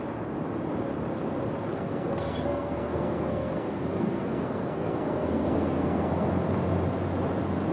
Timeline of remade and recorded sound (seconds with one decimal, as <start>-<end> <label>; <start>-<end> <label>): 0.0-1.7 recorded; 1.7-6.3 remade; 6.3-7.7 recorded